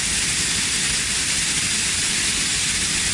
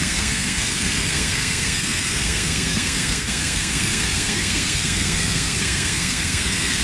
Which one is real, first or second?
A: first